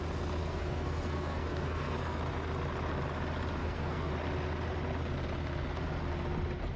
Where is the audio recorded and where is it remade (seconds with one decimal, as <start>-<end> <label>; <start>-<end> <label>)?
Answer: 0.0-0.4 recorded; 0.4-2.2 remade; 2.2-3.6 recorded; 3.6-4.1 remade; 4.1-6.8 recorded